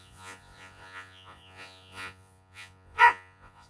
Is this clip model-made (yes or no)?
yes